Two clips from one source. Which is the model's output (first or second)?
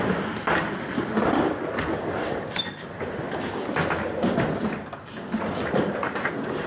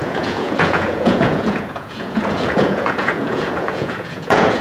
second